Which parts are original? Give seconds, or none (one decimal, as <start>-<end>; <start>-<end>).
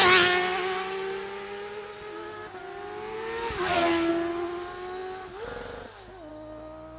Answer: 0.0-7.0